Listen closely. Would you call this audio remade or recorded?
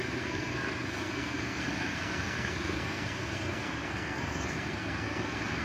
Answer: remade